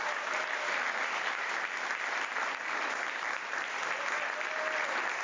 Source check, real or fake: fake